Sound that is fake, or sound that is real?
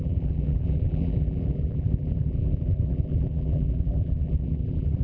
fake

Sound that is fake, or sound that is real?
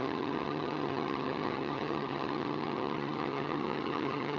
fake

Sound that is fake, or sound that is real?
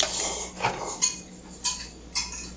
real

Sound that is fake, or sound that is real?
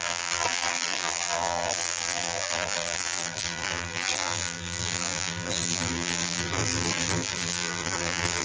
fake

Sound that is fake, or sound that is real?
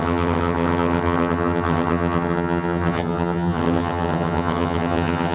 fake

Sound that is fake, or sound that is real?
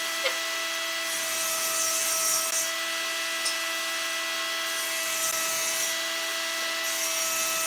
real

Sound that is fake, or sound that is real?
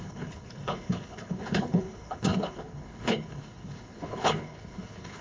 fake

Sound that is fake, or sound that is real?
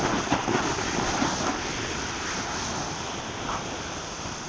real